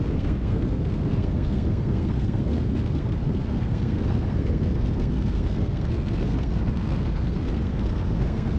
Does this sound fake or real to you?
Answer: fake